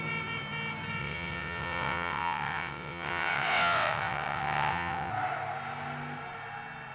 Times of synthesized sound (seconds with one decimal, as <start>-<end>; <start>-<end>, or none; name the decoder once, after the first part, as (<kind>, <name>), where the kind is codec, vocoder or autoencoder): 1.0-5.1 (vocoder, WaveNeXt)